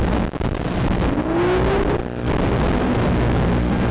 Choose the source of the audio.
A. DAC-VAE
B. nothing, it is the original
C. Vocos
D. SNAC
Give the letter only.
B